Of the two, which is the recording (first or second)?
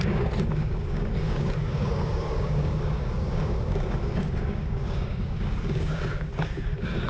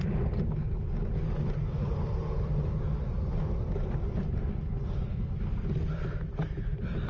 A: second